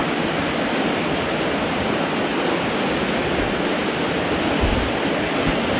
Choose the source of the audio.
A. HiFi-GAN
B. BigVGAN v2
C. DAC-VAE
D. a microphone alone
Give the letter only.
D